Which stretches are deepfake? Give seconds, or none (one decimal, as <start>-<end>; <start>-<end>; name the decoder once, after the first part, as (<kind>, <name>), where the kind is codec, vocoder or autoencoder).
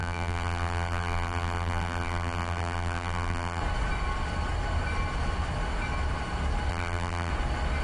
0.0-3.6 (vocoder, BigVGAN v2); 6.7-7.3